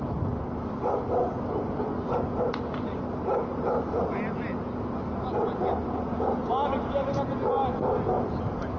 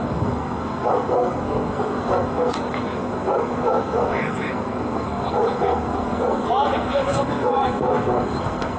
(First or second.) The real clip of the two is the first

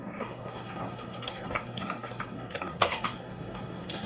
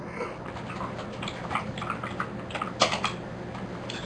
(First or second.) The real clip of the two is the second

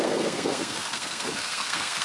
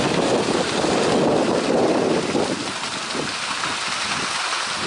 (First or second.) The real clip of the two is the second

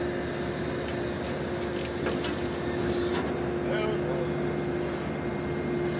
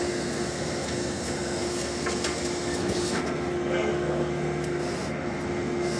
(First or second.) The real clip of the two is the first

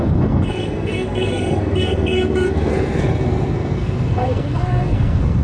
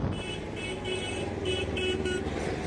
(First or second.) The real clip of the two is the second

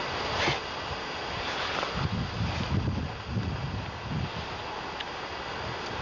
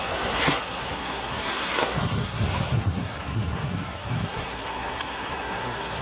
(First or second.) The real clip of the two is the first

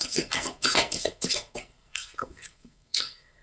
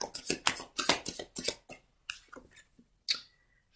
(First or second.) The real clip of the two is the second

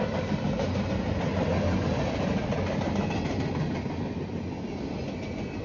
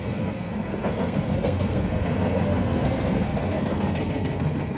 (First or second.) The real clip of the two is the first